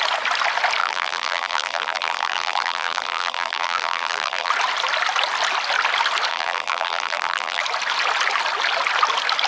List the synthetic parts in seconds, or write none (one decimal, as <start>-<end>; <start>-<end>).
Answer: 0.8-4.5; 6.3-7.6